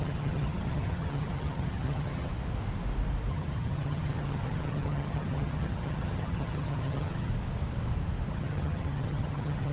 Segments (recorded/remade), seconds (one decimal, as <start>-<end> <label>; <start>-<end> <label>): 0.0-2.3 remade; 2.3-3.3 recorded; 3.3-7.3 remade; 7.3-8.3 recorded; 8.3-9.7 remade